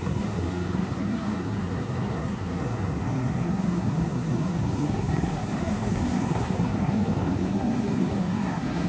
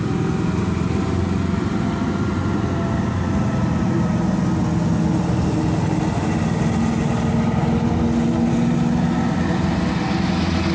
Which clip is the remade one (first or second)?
first